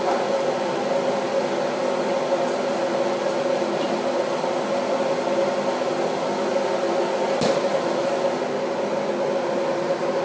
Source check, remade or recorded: recorded